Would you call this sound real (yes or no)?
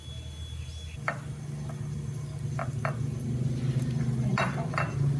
yes